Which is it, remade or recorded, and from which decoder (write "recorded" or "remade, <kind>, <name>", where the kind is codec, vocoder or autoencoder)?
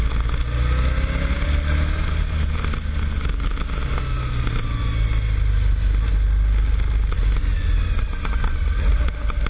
recorded